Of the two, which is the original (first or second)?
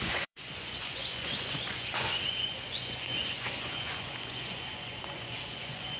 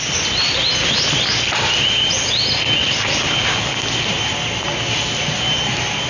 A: second